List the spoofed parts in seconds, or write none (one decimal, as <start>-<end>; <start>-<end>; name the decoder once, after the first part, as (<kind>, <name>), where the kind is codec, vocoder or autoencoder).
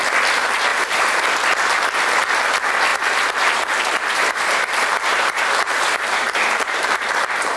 0.7-1.2 (vocoder, BigVGAN v2); 2.9-7.1